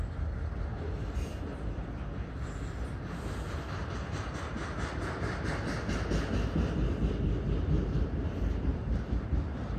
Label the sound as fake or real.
real